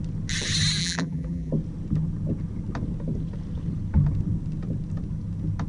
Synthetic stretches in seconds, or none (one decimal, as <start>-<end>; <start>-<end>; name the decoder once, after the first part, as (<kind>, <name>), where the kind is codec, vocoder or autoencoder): 0.8-1.5 (vocoder, BigVGAN v2)